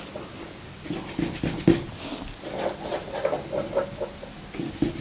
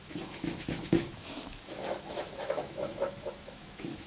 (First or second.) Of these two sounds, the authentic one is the first